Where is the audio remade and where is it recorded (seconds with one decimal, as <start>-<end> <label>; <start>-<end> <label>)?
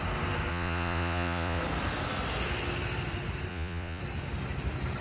0.0-0.5 recorded; 0.5-1.6 remade; 1.6-3.5 recorded; 3.5-4.0 remade; 4.0-5.0 recorded